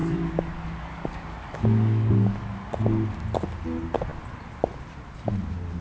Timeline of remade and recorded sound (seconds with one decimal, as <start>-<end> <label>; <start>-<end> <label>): 0.0-2.7 remade; 2.7-5.8 recorded